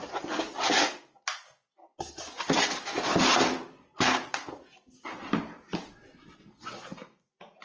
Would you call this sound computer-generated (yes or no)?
no